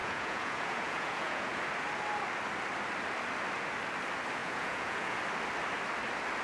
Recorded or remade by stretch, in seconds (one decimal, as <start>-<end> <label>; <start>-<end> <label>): 0.0-1.6 remade; 1.6-4.4 recorded; 4.4-5.2 remade; 5.2-6.4 recorded